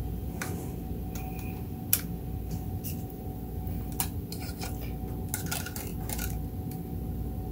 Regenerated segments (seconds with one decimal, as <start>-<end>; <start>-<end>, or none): none